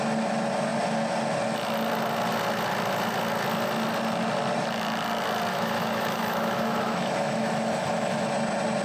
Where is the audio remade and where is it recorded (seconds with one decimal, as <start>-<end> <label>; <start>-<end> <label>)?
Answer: 0.0-5.5 recorded; 5.5-8.3 remade; 8.3-8.8 recorded